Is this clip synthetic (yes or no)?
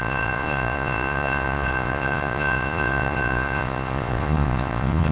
yes